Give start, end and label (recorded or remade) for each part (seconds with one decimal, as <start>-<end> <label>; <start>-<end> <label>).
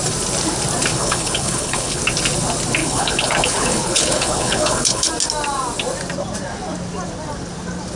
0.0-0.9 recorded; 0.9-2.0 remade; 2.0-2.8 recorded; 2.8-5.1 remade; 5.1-8.0 recorded